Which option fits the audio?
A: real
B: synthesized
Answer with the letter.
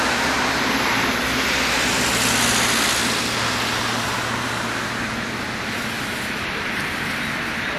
A